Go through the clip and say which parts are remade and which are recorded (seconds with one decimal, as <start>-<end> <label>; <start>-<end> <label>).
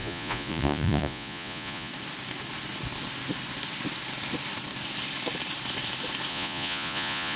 0.0-1.9 remade; 1.9-6.3 recorded; 6.3-7.4 remade